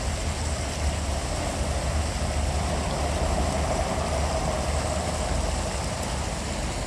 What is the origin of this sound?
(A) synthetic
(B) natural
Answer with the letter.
B